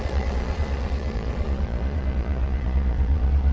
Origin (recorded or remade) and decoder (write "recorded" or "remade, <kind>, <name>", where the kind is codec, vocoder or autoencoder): remade, vocoder, Vocos